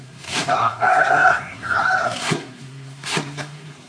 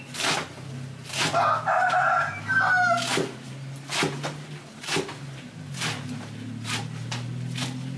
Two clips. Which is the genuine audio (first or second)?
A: second